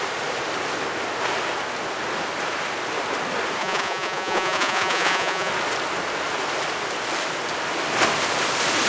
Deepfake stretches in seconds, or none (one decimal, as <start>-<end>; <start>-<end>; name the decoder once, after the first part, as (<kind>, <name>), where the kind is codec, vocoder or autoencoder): 3.6-5.5 (vocoder, Vocos)